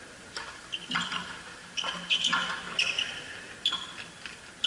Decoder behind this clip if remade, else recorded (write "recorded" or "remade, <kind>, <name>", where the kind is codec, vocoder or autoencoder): recorded